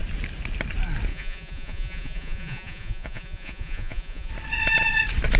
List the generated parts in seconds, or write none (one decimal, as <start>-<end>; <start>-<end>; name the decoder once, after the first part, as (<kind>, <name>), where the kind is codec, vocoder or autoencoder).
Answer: 1.1-4.3 (vocoder, Vocos)